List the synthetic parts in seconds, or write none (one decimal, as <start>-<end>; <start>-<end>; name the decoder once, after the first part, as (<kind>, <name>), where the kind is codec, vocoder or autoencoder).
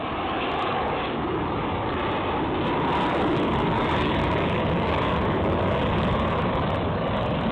0.0-2.0 (codec, DAC); 3.1-7.5